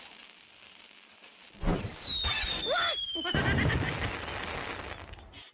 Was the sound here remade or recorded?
recorded